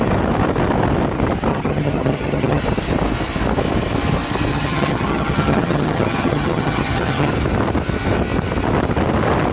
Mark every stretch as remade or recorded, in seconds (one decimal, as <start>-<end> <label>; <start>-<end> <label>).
0.0-1.5 recorded; 1.5-2.6 remade; 2.6-4.5 recorded; 4.5-7.3 remade; 7.3-9.5 recorded